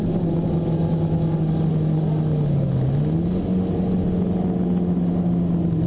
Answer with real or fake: real